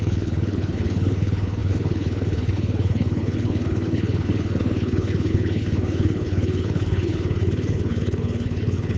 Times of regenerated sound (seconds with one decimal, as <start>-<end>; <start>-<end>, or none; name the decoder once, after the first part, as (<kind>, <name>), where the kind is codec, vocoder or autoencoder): 0.0-9.0 (codec, HILCodec)